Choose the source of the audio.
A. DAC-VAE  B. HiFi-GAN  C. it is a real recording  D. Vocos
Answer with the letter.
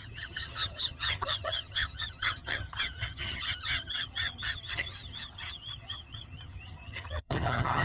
B